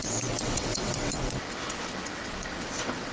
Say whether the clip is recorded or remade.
remade